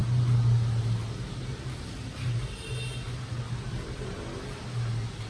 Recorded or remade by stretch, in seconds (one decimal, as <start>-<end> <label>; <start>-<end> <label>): 0.0-5.3 recorded